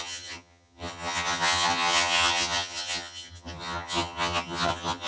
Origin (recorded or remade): remade